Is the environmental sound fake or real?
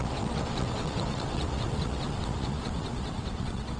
fake